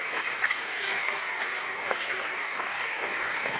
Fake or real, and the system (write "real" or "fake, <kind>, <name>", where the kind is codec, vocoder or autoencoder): fake, codec, DAC